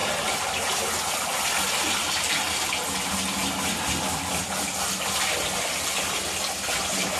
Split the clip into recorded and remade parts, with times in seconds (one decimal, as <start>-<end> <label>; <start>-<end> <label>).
0.0-7.2 recorded